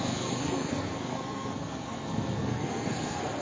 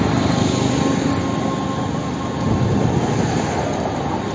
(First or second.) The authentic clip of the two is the second